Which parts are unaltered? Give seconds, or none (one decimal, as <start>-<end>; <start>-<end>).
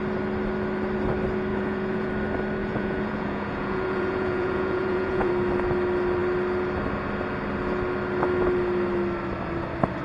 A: 0.0-1.5; 2.1-2.6; 5.3-10.0